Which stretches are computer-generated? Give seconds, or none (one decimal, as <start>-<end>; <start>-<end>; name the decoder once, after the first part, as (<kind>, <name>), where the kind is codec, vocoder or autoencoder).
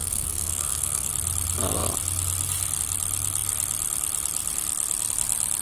0.0-1.1 (codec, SNAC)